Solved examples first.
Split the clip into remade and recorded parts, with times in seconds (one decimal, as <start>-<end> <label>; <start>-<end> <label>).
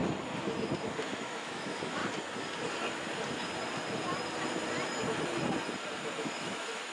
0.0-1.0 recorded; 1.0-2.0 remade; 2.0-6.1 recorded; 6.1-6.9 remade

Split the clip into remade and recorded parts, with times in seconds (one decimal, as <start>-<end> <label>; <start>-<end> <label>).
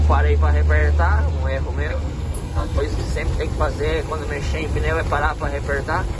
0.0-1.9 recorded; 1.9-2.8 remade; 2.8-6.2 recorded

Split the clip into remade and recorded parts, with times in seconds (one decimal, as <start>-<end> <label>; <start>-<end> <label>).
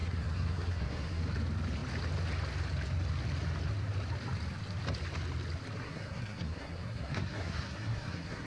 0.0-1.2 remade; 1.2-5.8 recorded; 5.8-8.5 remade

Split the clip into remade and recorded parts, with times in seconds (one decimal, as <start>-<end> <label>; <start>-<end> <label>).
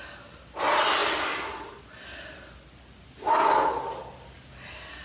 0.0-5.0 recorded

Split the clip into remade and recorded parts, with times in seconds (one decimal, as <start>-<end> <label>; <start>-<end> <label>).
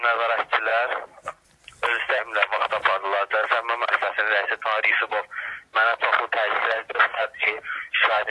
0.0-7.1 recorded; 7.1-8.3 remade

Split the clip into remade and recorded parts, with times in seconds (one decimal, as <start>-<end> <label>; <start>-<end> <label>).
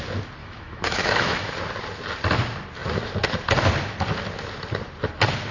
0.0-0.4 recorded; 0.4-1.5 remade; 1.5-5.5 recorded